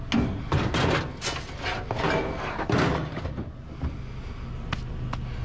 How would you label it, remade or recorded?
recorded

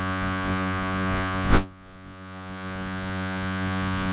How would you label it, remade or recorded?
remade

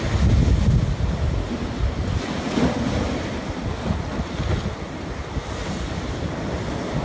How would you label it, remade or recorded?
recorded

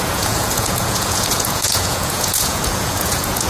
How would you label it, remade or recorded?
remade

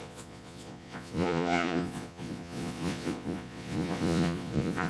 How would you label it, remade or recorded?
remade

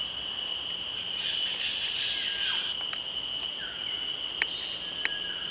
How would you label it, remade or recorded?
recorded